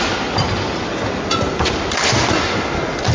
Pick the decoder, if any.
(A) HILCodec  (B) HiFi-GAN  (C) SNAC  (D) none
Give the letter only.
D